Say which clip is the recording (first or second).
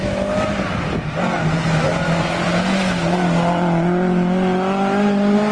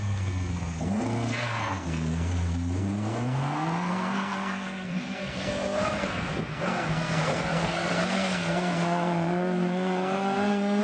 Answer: first